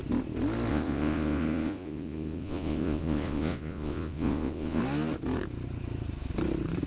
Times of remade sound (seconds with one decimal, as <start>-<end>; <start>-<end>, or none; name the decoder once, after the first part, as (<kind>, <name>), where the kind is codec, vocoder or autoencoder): 0.7-4.8 (vocoder, Vocos)